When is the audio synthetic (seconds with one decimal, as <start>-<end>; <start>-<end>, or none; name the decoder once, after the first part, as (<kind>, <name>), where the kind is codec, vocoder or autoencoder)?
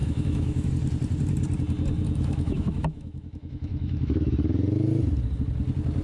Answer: 0.0-0.7 (autoencoder, DAC-VAE); 2.0-4.3